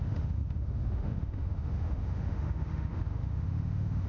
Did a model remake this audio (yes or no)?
yes